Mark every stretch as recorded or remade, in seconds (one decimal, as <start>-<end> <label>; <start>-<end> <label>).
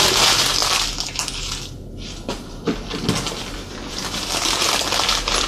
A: 0.0-0.6 remade; 0.6-3.9 recorded; 3.9-5.5 remade